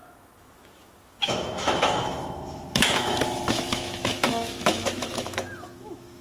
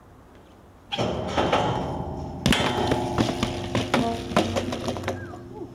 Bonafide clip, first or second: second